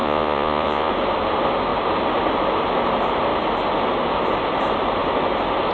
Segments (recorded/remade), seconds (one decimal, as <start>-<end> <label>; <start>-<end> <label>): 0.0-0.9 remade; 0.9-5.7 recorded

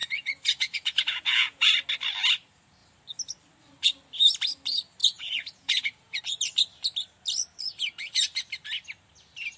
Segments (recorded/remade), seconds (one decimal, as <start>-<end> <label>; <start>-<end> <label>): 0.0-1.7 remade; 1.7-5.0 recorded; 5.0-6.2 remade; 6.2-9.6 recorded